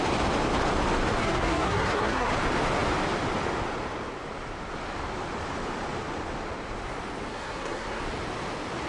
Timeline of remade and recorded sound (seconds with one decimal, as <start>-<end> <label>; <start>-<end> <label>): 0.0-1.2 recorded; 1.2-2.3 remade; 2.3-7.3 recorded; 7.3-8.0 remade; 8.0-8.9 recorded